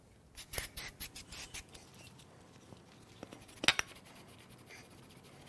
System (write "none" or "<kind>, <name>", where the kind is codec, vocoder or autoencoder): none